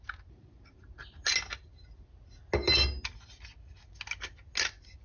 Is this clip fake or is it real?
real